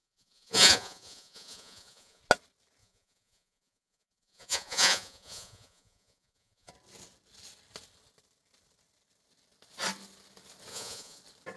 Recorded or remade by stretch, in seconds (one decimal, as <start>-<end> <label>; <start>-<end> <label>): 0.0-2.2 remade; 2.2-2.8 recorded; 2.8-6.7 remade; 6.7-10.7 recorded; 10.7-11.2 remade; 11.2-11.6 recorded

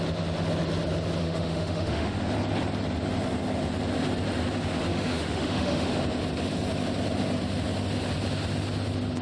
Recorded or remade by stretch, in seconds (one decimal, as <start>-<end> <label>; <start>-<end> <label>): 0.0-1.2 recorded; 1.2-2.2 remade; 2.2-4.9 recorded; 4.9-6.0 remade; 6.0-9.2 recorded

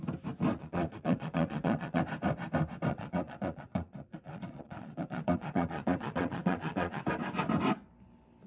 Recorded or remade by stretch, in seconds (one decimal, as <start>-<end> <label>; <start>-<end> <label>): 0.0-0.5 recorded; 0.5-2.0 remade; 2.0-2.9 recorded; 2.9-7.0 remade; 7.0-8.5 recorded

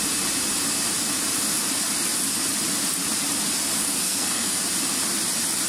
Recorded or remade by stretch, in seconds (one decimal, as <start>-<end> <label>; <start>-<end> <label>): 0.0-4.0 recorded; 4.0-4.6 remade; 4.6-5.7 recorded